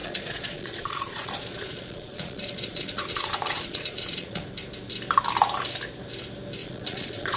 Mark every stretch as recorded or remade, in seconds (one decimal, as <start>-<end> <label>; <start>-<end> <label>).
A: 0.0-4.4 remade; 4.4-6.6 recorded; 6.6-7.4 remade